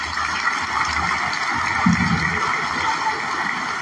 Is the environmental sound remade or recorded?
recorded